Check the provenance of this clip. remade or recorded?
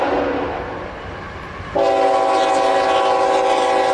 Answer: recorded